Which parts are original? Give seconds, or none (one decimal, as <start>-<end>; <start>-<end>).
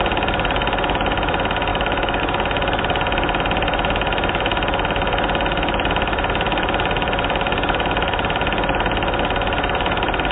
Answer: 0.0-1.7; 2.2-10.3